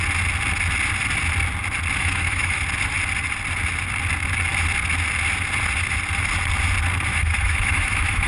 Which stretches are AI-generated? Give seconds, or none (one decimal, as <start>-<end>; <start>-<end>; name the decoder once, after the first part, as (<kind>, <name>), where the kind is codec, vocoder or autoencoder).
2.0-2.6 (autoencoder, DAC-VAE); 7.1-8.3